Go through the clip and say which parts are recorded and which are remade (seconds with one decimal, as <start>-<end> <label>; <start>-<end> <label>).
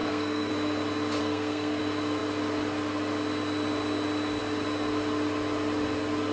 0.0-0.5 remade; 0.5-1.2 recorded; 1.2-1.8 remade; 1.8-6.3 recorded